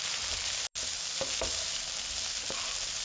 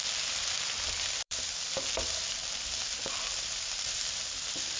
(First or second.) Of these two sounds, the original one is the first